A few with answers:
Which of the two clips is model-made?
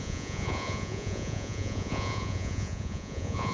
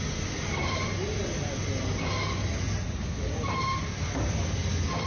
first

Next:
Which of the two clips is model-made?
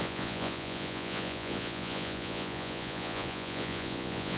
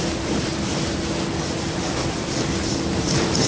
first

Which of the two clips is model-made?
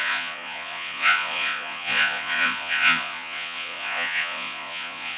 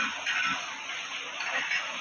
first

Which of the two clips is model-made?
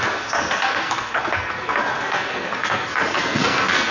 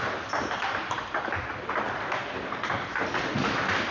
first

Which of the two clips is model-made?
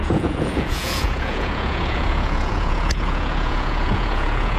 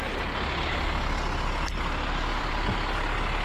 first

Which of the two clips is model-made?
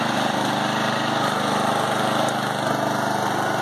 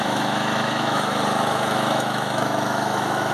second